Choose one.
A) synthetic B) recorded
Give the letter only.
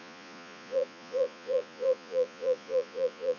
A